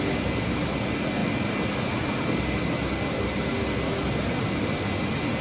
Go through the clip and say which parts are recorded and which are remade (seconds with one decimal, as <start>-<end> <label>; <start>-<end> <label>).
0.0-5.4 recorded